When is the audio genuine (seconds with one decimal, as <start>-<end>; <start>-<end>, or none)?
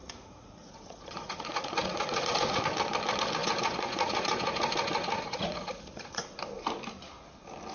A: 2.6-3.4; 6.2-7.7